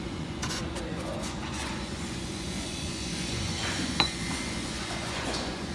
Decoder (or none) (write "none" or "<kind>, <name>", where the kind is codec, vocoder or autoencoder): vocoder, Vocos